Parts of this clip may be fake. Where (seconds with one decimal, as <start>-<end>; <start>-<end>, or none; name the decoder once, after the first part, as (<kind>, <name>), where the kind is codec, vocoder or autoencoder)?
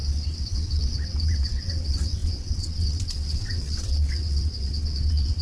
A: 0.0-5.4 (vocoder, WaveNeXt)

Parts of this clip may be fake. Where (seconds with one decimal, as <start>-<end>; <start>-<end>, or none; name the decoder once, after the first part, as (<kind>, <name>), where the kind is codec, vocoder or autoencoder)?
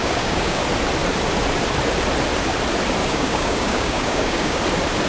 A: 0.0-0.6 (codec, DAC); 3.0-4.6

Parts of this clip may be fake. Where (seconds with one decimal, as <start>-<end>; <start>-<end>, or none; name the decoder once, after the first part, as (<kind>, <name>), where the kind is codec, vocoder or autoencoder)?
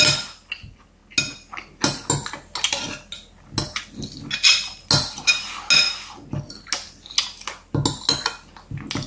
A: none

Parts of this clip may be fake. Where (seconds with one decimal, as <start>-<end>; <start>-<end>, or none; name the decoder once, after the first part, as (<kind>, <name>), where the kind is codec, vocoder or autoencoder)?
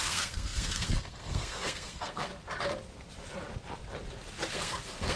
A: 0.0-2.3 (codec, SNAC); 4.5-5.2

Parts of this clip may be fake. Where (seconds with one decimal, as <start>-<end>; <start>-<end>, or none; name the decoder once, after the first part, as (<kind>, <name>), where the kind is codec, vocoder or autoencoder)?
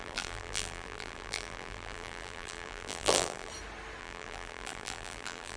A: 0.0-3.5 (vocoder, BigVGAN v2); 4.0-5.6